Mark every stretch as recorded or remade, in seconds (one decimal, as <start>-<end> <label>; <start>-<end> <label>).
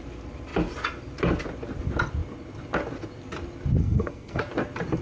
0.0-3.8 recorded; 3.8-4.4 remade; 4.4-5.0 recorded